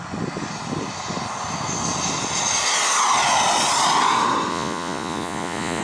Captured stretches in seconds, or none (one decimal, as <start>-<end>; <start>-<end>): 0.0-4.5